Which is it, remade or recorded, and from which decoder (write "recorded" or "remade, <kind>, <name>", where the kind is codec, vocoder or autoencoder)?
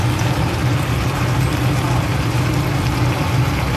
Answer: recorded